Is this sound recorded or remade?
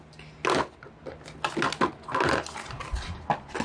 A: recorded